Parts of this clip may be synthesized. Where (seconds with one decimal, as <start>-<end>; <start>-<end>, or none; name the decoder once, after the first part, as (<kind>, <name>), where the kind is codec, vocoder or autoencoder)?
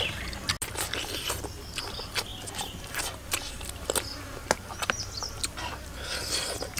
none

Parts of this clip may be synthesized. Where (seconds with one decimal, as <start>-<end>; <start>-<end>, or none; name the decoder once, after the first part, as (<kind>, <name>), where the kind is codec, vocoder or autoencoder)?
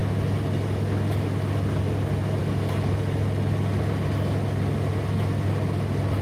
none